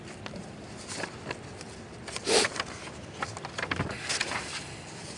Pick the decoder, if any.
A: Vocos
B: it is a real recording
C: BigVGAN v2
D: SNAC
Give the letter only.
B